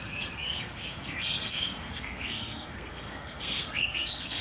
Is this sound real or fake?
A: fake